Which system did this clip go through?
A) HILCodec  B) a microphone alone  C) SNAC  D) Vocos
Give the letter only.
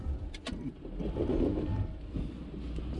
B